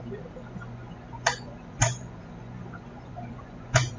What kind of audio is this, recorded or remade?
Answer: remade